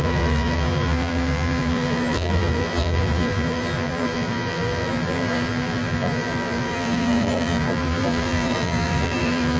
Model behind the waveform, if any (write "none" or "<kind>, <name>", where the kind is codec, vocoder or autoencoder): vocoder, BigVGAN v2